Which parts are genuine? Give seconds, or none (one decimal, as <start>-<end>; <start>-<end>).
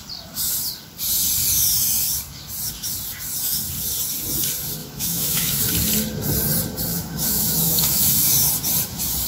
0.0-4.8; 5.6-6.9; 8.3-9.3